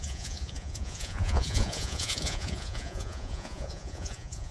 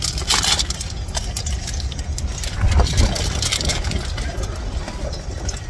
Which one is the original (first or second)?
second